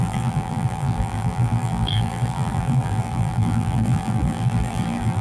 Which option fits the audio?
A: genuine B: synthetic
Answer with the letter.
B